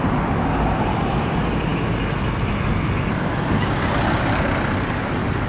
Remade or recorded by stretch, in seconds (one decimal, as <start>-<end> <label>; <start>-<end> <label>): 0.0-5.5 recorded